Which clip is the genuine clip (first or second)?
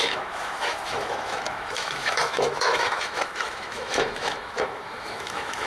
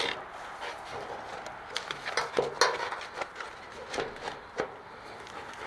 second